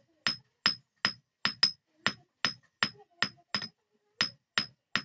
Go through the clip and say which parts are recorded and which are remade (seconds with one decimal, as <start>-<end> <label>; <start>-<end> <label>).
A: 0.0-5.0 recorded